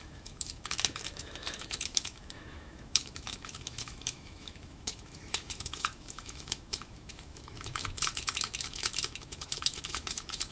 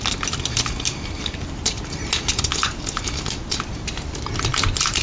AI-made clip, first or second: first